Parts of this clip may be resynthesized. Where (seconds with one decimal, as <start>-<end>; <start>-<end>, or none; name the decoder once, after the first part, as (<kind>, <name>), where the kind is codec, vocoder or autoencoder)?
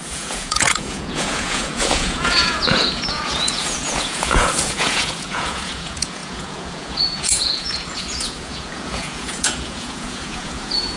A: 0.0-11.0 (vocoder, Vocos)